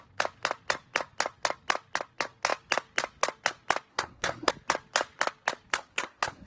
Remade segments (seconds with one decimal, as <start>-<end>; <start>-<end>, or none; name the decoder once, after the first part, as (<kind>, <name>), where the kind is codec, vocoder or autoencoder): 3.9-4.5 (codec, SNAC); 5.7-6.5